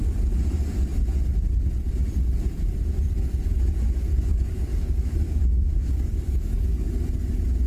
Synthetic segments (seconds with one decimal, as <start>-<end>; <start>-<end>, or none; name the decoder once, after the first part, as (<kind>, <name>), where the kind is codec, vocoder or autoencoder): 4.1-6.9 (codec, DAC)